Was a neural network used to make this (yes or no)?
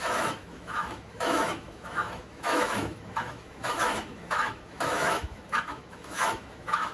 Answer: yes